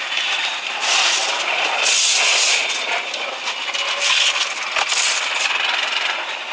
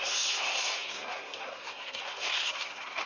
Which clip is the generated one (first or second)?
second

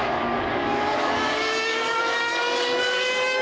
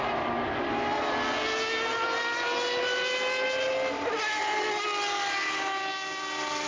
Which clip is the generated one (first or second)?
first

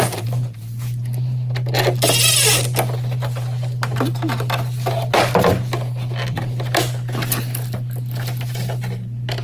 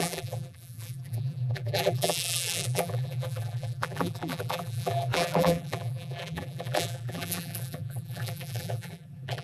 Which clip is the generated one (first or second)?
second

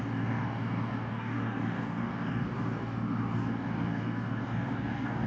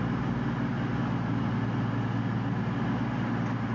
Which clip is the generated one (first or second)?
first